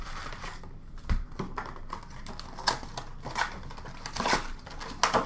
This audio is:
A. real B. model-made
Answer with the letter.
A